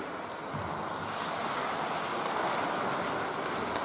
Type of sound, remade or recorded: recorded